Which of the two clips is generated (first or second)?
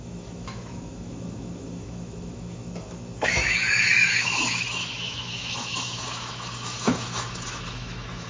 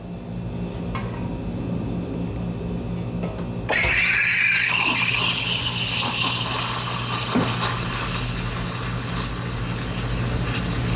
first